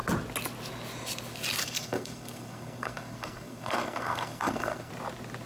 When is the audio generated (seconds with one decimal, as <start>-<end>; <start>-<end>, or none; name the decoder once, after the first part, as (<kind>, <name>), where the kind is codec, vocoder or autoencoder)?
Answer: 1.6-4.9 (codec, SNAC)